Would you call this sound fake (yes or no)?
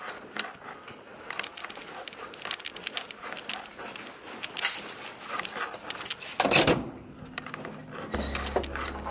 no